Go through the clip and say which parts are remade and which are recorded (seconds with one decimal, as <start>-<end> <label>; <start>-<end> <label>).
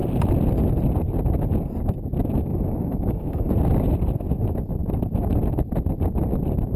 0.0-2.5 recorded; 2.5-3.5 remade; 3.5-6.8 recorded